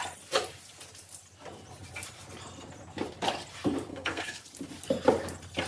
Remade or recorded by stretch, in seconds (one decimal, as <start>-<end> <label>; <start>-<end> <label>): 0.0-3.9 recorded; 3.9-4.4 remade; 4.4-5.7 recorded